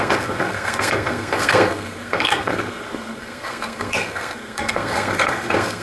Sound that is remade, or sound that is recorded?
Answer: remade